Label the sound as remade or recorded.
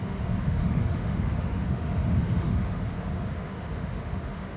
remade